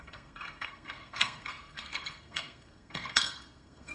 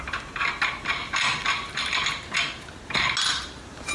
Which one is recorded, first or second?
second